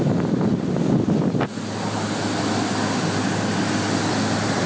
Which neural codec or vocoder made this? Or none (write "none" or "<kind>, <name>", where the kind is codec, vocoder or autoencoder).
none